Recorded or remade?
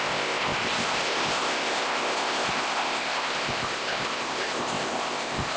remade